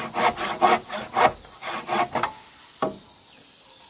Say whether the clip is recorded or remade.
recorded